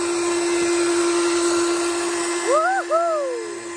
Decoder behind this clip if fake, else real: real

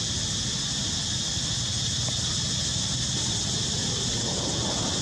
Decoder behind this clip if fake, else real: real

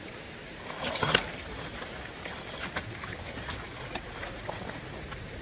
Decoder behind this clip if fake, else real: real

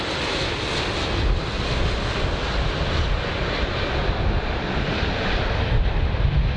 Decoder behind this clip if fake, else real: real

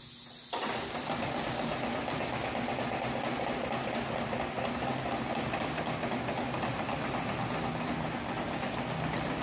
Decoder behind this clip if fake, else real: real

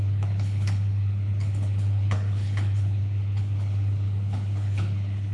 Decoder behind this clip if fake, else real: fake, codec, HILCodec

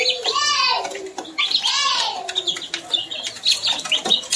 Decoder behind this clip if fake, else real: real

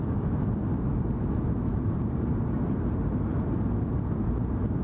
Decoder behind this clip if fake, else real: real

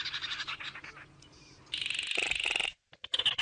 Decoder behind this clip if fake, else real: real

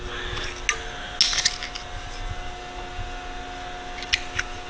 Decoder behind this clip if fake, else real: real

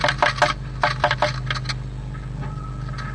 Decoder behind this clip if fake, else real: real